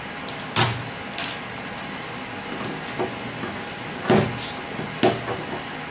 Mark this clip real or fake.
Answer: real